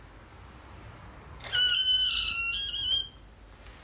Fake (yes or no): no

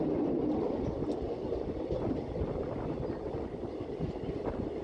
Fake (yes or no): no